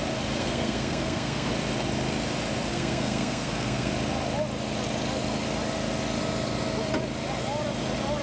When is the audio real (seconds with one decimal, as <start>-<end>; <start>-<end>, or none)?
0.0-0.4; 1.5-2.7; 3.9-8.2

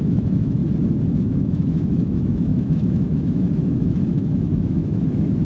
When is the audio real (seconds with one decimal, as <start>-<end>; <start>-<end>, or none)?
0.6-1.2

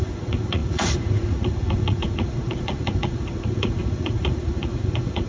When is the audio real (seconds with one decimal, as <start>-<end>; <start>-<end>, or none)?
none